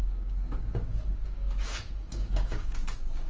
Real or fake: fake